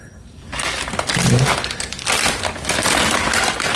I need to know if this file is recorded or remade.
recorded